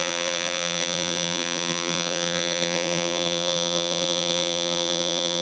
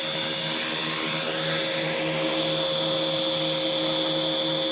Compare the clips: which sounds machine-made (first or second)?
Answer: first